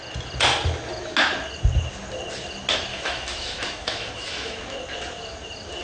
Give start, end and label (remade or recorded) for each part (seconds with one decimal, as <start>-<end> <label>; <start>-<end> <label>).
0.0-2.9 recorded; 2.9-4.6 remade; 4.6-5.8 recorded